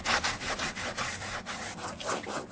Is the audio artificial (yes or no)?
no